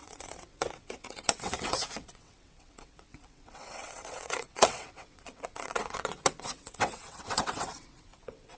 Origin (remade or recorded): remade